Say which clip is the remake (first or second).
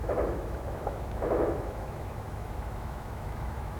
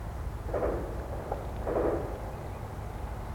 first